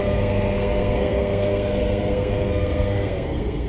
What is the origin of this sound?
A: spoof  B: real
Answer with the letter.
A